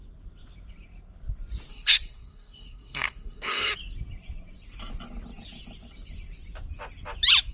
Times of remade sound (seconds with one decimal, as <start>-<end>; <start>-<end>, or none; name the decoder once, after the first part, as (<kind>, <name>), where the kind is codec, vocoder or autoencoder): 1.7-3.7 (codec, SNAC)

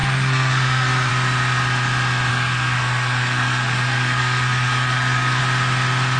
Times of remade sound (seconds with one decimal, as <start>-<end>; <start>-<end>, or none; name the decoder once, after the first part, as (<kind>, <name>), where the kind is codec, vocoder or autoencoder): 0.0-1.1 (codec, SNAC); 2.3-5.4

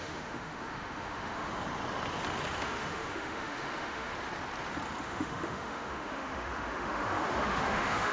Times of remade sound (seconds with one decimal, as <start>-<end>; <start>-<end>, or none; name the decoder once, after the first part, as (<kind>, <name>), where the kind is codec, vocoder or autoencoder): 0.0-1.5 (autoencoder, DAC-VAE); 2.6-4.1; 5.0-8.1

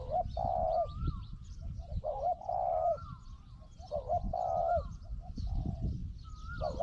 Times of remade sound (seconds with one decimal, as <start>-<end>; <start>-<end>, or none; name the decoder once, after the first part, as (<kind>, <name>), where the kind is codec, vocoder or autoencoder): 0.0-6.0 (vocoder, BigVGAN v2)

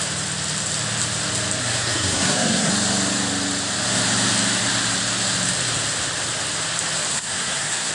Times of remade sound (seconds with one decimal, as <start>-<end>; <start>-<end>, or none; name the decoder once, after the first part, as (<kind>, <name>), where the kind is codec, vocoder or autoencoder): 1.6-2.7 (codec, SNAC); 7.1-7.9

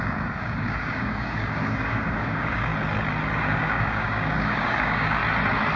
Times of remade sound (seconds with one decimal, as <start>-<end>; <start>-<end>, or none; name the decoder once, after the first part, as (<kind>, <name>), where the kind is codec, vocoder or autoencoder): 0.0-2.7 (codec, DAC); 3.4-5.2